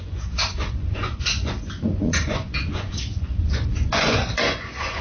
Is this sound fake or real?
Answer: fake